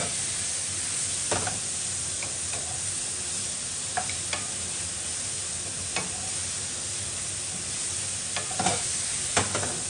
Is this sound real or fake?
real